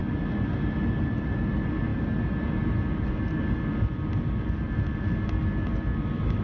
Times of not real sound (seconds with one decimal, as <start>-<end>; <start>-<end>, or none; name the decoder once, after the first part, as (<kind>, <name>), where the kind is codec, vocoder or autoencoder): none

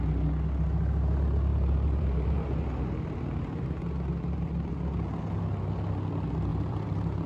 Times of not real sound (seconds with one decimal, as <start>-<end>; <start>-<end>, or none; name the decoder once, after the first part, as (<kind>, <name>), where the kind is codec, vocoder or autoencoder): 1.5-4.7 (vocoder, BigVGAN v2); 6.5-7.3